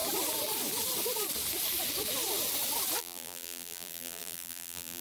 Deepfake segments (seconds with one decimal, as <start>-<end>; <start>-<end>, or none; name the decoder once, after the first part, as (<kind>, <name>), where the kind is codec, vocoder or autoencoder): 3.0-5.0 (vocoder, BigVGAN v2)